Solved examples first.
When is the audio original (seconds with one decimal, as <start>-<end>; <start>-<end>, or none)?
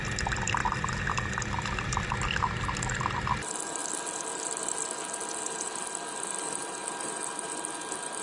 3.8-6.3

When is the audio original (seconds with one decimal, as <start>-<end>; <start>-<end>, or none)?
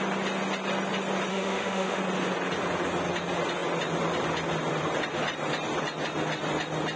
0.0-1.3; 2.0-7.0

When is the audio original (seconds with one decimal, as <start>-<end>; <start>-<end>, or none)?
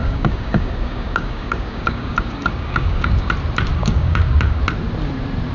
3.3-3.7; 4.6-5.5